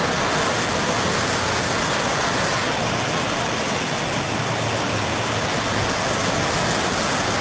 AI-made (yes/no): no